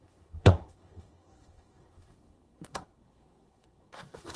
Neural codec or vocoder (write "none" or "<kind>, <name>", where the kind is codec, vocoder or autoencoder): codec, SNAC